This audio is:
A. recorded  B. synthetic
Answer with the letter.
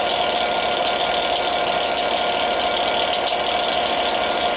A